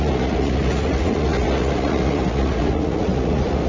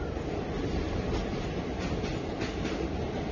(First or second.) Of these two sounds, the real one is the second